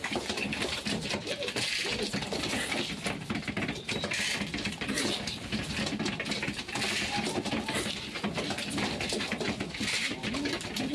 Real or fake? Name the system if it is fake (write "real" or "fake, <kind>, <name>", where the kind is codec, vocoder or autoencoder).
real